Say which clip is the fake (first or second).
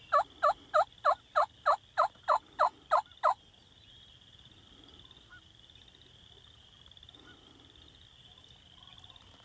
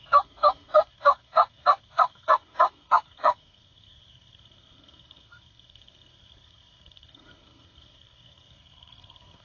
second